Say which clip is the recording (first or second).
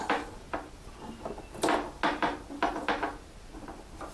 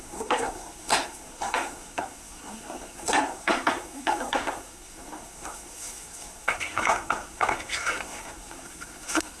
first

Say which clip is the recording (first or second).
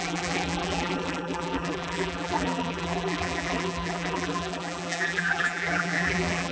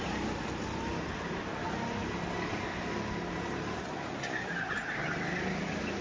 second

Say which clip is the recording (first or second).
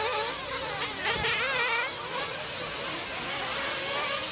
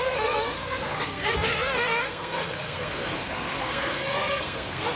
first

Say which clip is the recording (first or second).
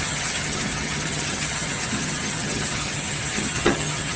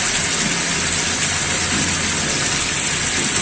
second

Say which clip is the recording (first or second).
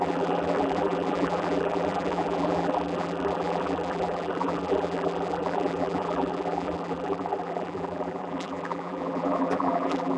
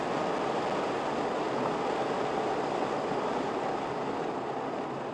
second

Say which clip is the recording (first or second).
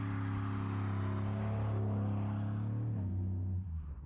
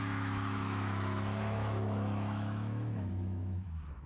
first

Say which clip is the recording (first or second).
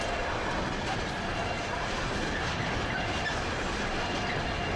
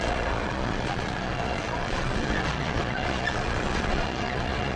first